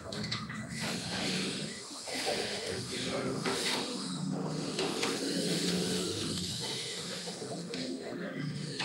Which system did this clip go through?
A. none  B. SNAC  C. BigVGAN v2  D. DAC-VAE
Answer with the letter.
D